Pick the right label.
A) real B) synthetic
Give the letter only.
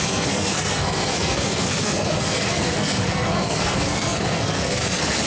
B